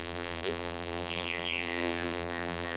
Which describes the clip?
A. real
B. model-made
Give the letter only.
B